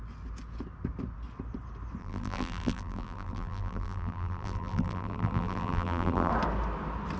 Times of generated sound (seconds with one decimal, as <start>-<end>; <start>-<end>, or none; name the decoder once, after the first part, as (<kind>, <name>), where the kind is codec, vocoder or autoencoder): 2.0-6.3 (vocoder, BigVGAN v2)